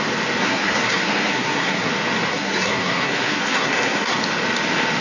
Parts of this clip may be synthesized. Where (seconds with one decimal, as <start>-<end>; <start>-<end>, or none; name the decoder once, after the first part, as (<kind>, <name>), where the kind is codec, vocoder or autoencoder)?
0.4-1.9 (codec, SNAC); 2.3-4.1